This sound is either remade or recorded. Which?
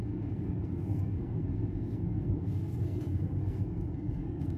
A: remade